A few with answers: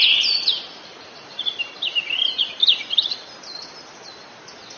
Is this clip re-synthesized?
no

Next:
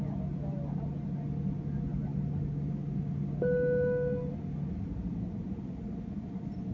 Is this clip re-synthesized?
no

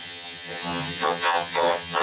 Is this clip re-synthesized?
yes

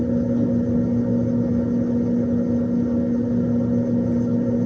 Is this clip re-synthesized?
no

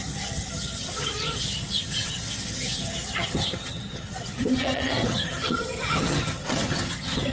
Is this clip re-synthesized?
yes